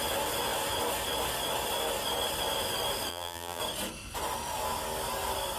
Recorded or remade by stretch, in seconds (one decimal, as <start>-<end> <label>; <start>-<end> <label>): 0.0-3.1 recorded; 3.1-3.6 remade; 3.6-5.6 recorded